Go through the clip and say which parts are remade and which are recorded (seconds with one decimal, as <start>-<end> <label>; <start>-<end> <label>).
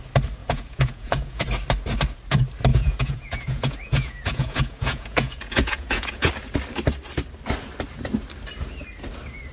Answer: 0.0-0.4 recorded; 0.4-1.4 remade; 1.4-2.7 recorded; 2.7-6.3 remade; 6.3-9.5 recorded